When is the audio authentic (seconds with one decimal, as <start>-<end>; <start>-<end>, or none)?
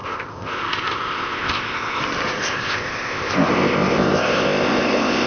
2.0-2.4